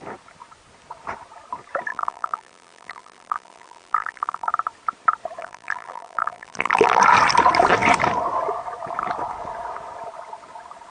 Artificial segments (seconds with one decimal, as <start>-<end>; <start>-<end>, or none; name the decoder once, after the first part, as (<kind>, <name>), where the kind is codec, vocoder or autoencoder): 1.9-4.5 (vocoder, BigVGAN v2); 5.4-7.0

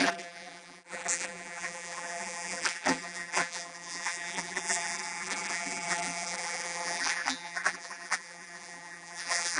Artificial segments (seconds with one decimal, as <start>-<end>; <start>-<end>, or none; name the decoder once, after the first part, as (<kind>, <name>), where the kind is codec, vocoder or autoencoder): 0.0-9.6 (vocoder, BigVGAN v2)

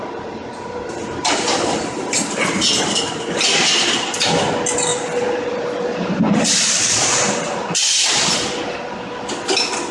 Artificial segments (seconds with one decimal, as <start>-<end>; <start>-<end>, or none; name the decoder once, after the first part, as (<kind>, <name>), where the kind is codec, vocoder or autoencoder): 4.9-8.6 (vocoder, BigVGAN v2)